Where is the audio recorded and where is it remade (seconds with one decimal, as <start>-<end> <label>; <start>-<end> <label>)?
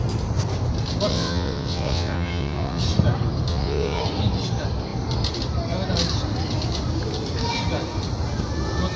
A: 0.0-1.1 recorded; 1.1-2.8 remade; 2.8-3.5 recorded; 3.5-4.0 remade; 4.0-9.0 recorded